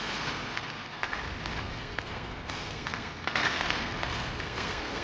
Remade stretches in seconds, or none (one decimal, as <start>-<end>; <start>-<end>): 0.0-1.1; 1.6-5.0